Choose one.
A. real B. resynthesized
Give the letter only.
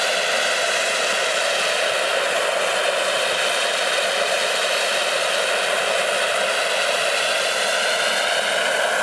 A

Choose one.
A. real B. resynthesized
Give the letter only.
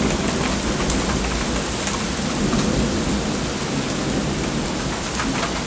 A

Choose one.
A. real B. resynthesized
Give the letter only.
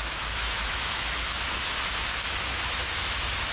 B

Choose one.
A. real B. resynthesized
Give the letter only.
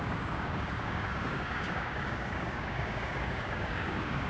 B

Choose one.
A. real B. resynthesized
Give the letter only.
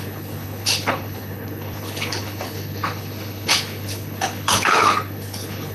B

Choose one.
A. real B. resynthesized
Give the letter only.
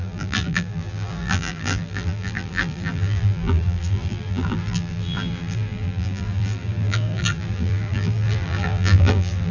B